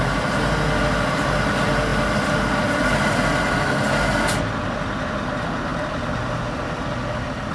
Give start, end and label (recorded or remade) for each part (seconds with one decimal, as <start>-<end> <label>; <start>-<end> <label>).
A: 0.0-5.7 recorded; 5.7-6.8 remade; 6.8-7.5 recorded